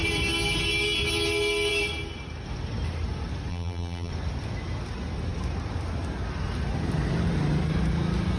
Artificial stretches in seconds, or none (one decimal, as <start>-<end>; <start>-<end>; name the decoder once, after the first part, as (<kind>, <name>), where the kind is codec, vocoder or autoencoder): 3.5-4.1 (vocoder, BigVGAN v2)